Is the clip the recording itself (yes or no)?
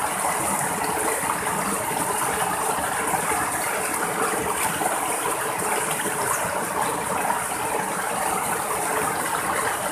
yes